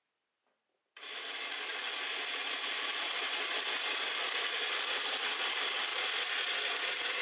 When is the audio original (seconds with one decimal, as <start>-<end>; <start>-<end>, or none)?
0.0-1.7; 5.3-5.9